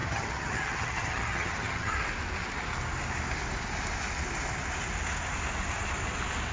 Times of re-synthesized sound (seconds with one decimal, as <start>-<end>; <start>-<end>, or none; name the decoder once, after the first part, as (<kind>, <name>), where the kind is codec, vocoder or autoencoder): 0.0-1.9 (vocoder, HiFi-GAN)